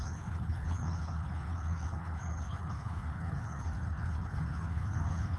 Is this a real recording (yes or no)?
no